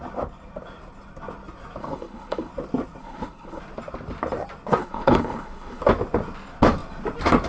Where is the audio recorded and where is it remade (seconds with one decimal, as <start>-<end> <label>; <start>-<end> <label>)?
0.0-1.8 recorded; 1.8-2.5 remade; 2.5-3.0 recorded; 3.0-3.6 remade; 3.6-4.8 recorded; 4.8-5.8 remade; 5.8-7.5 recorded